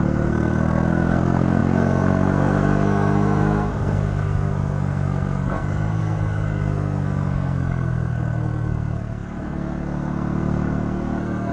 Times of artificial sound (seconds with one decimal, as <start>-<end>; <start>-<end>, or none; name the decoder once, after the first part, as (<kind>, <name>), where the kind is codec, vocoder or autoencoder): 0.0-11.5 (codec, SNAC)